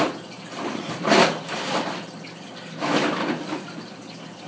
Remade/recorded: remade